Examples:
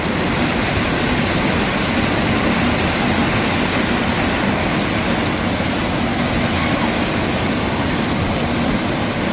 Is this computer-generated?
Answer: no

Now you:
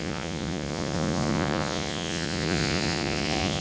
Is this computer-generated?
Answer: yes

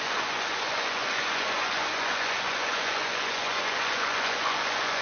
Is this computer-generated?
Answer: yes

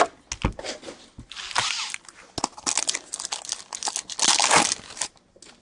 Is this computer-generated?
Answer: no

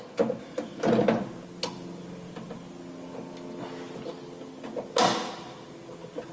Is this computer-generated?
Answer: no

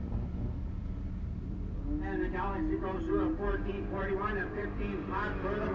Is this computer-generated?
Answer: no